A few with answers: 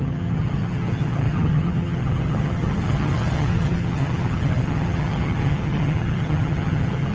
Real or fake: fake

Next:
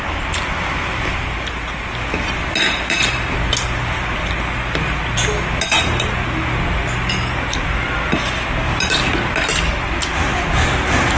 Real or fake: real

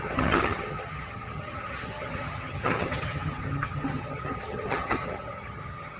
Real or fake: fake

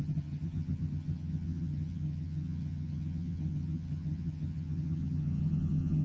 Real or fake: fake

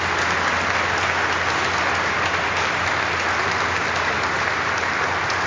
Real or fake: real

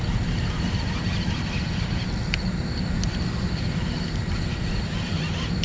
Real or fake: real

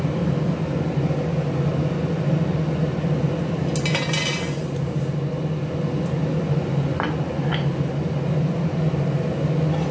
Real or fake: real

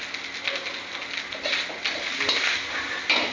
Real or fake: real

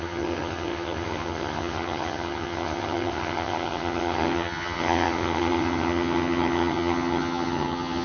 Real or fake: fake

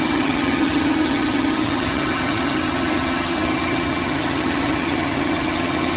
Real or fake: fake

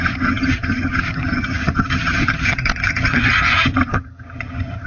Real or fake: fake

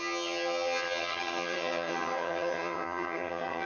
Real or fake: fake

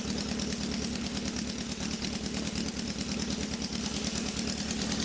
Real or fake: real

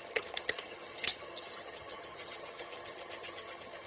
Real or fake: fake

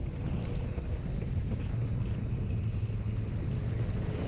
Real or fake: real